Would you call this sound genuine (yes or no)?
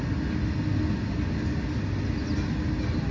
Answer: yes